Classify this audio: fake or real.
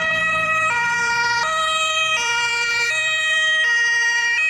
fake